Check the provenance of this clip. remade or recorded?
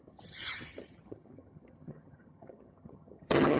remade